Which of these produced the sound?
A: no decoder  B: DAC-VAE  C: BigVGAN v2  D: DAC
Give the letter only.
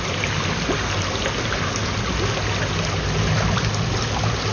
A